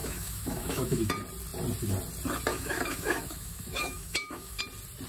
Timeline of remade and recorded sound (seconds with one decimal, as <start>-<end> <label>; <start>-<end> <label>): 0.0-1.1 remade; 1.1-2.5 recorded; 2.5-4.6 remade; 4.6-5.1 recorded